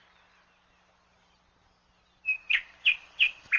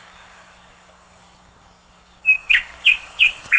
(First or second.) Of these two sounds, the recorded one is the first